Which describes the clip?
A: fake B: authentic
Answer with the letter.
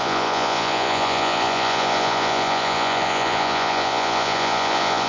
A